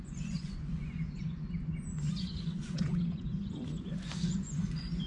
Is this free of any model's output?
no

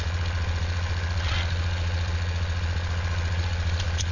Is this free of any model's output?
no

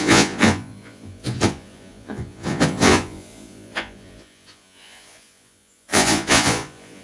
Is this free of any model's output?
no